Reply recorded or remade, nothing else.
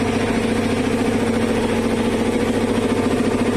recorded